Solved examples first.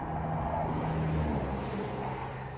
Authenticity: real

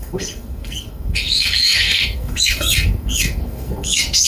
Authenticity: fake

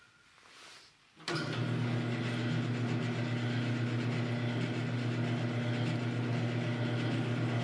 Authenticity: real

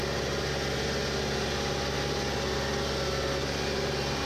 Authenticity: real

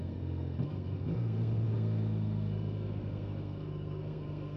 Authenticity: fake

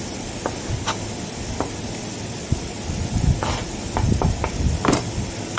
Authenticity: real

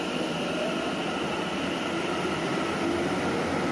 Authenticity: real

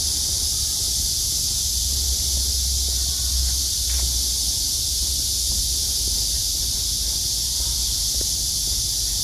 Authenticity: real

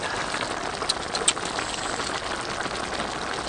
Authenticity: real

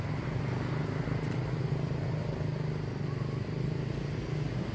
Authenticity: real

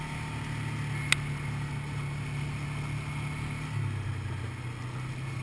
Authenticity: real